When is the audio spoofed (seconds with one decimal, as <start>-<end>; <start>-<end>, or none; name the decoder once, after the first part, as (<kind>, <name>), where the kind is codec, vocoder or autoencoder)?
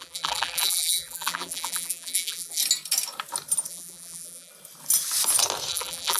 0.0-2.6 (vocoder, BigVGAN v2); 3.7-4.5; 5.7-6.2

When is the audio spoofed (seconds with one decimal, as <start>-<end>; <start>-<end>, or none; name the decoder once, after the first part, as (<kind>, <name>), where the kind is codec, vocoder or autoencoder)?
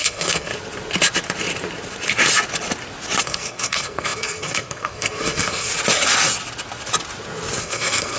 0.0-0.5 (codec, SNAC); 3.2-5.7; 7.6-8.2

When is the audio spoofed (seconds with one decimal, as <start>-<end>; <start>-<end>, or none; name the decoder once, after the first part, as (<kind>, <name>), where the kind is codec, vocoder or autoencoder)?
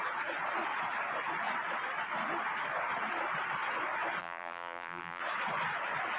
4.2-5.2 (vocoder, BigVGAN v2)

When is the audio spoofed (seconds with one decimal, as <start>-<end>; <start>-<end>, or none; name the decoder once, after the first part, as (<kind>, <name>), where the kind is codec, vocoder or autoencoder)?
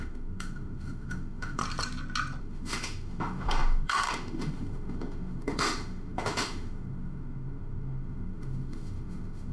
0.0-1.6 (autoencoder, DAC-VAE); 2.4-9.5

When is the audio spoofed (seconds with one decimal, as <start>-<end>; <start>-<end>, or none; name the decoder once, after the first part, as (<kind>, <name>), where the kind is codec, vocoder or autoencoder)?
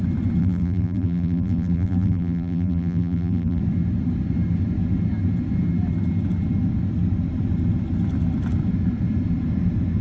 0.4-3.6 (vocoder, BigVGAN v2)